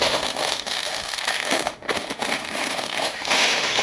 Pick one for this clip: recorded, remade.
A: remade